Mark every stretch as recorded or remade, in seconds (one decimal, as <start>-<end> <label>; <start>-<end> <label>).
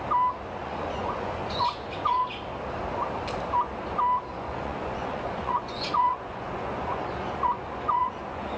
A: 0.0-0.6 recorded; 0.6-2.4 remade; 2.4-4.3 recorded; 4.3-8.6 remade